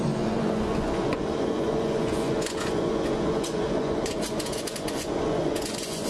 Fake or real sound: fake